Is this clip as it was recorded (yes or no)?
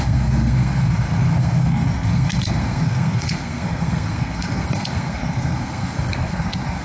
no